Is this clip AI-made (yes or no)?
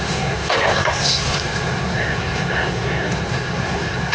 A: yes